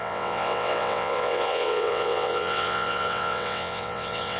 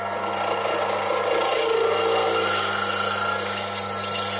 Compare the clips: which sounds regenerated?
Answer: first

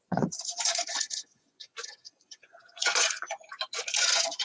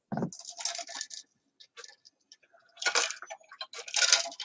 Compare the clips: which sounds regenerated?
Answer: first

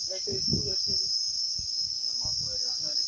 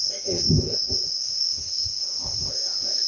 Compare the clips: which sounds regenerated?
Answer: second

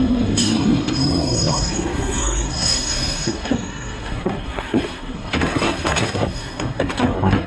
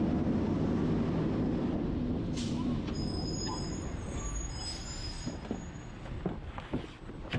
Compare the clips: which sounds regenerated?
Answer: first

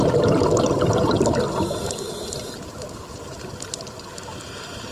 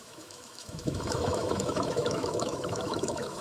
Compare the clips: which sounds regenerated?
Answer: second